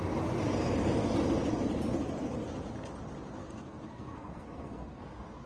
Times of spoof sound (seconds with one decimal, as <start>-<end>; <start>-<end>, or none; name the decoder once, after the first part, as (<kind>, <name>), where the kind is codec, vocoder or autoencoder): 3.4-5.0 (codec, SNAC)